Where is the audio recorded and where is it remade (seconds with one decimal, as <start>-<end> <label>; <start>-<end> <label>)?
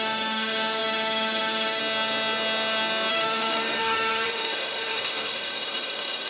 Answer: 0.0-1.8 remade; 1.8-3.1 recorded; 3.1-6.3 remade